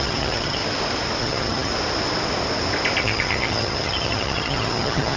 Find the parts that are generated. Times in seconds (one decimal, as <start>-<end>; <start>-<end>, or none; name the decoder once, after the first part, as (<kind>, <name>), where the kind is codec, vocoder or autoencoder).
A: 0.0-0.6 (vocoder, HiFi-GAN); 1.2-1.7; 3.0-5.2